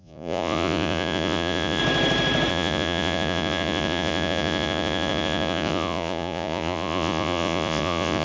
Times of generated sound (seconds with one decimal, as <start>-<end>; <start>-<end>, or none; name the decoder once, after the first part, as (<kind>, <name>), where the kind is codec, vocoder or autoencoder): 0.0-1.8 (vocoder, Vocos); 2.5-8.2